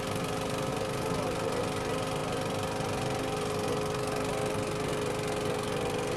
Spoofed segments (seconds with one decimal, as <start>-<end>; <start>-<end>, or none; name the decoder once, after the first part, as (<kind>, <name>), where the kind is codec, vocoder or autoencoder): none